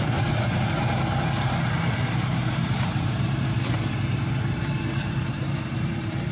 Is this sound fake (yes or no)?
yes